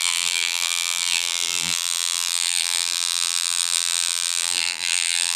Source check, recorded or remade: remade